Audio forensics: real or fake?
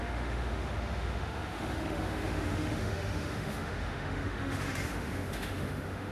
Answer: fake